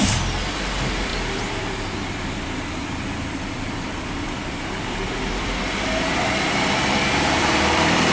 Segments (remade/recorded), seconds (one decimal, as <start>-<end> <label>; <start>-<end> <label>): 0.0-8.1 remade